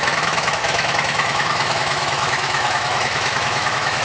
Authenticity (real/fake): fake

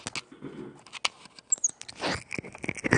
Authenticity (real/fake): real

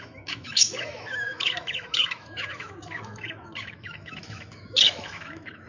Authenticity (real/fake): fake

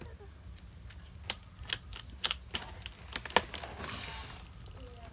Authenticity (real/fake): real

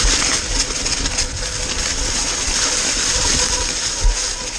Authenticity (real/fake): real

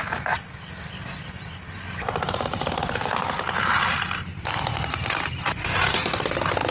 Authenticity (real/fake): real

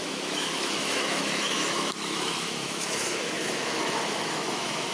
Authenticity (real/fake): fake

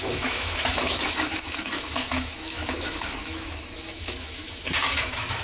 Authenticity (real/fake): fake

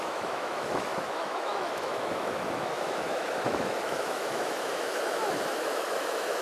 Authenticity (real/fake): fake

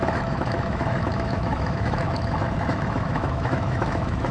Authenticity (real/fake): fake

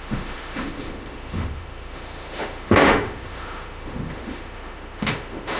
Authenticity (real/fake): fake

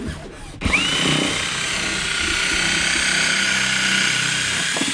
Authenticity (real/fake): real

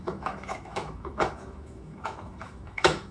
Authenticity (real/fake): fake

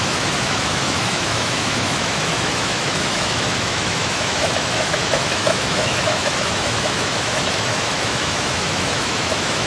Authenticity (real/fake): fake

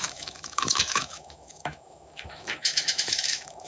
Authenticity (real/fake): fake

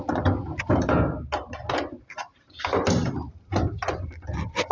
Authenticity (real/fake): real